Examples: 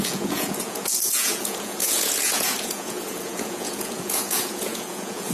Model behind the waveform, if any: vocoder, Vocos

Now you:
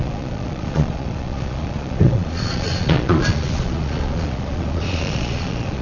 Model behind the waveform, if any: vocoder, Vocos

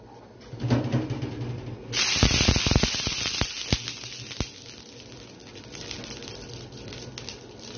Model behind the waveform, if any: none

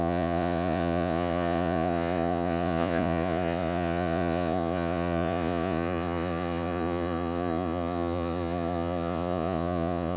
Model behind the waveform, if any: vocoder, Vocos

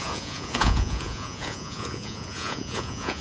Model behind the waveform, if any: vocoder, Vocos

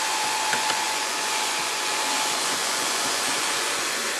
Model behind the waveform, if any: vocoder, Vocos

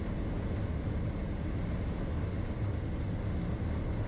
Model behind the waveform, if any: none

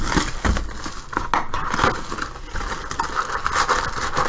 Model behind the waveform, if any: none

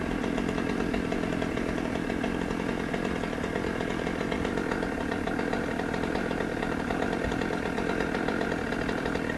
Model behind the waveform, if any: none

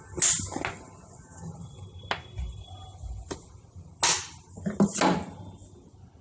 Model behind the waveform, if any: none